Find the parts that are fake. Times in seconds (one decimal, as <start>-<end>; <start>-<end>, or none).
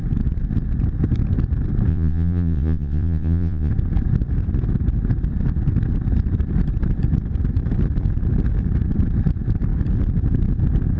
1.9-3.7